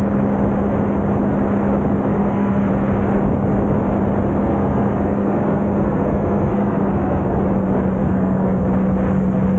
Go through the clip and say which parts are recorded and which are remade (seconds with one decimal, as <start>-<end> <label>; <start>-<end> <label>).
0.0-2.1 recorded; 2.1-2.7 remade; 2.7-4.4 recorded; 4.4-7.4 remade; 7.4-8.0 recorded; 8.0-8.6 remade; 8.6-9.6 recorded